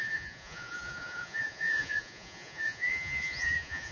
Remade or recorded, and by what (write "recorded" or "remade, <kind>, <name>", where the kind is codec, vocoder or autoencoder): remade, vocoder, Vocos